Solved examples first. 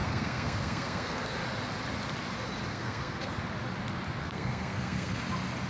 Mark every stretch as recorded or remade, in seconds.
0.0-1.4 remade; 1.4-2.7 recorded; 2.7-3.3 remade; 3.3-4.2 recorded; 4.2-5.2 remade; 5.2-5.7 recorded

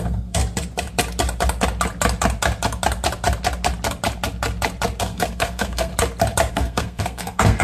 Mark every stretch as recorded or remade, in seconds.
0.0-0.4 remade; 0.4-5.0 recorded; 5.0-5.9 remade; 5.9-6.5 recorded; 6.5-7.6 remade

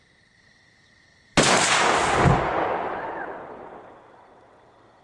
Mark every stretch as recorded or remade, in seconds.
0.0-5.0 recorded